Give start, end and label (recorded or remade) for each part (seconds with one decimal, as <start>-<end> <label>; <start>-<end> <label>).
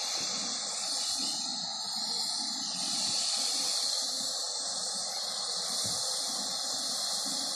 0.0-7.6 recorded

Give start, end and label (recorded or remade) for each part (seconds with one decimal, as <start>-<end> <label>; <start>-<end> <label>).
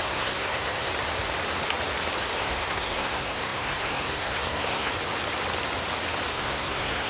0.0-0.9 remade; 0.9-2.4 recorded; 2.4-4.9 remade; 4.9-6.3 recorded; 6.3-7.1 remade